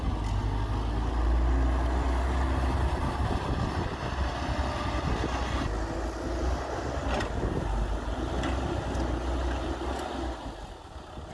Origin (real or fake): real